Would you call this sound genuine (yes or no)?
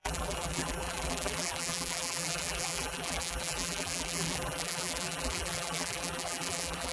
no